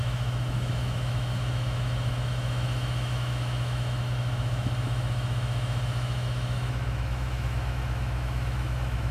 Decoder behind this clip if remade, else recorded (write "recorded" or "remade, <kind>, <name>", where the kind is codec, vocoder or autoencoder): remade, autoencoder, DAC-VAE